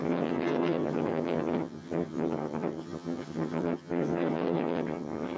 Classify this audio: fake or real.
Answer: fake